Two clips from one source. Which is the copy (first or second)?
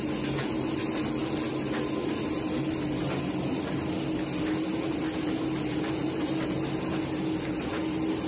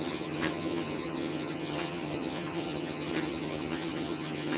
second